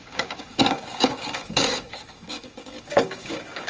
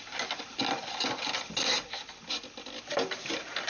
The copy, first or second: first